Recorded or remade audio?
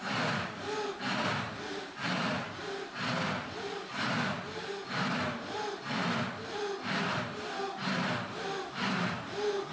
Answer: remade